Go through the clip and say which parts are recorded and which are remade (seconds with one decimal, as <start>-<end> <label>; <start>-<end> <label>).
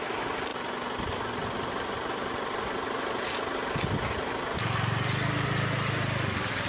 0.0-6.7 recorded